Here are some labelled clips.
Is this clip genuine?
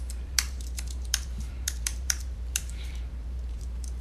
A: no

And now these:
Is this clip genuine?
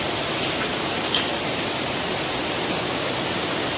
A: no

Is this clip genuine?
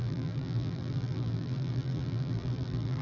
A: no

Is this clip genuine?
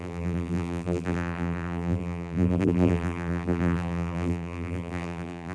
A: no